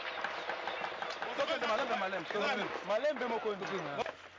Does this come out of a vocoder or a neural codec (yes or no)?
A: no